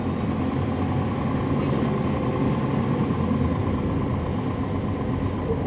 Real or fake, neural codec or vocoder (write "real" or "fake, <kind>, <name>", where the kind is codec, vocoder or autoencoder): real